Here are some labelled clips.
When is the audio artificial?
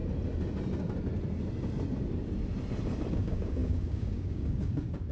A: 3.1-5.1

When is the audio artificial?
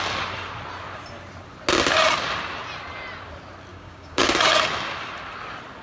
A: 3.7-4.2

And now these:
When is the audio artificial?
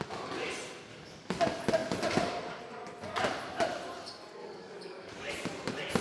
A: 0.9-1.4; 4.4-5.3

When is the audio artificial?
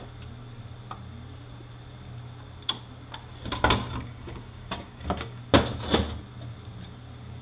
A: 4.1-5.4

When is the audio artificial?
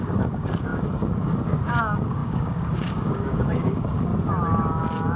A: 0.0-4.1; 4.7-5.2